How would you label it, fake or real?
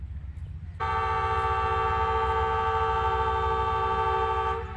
real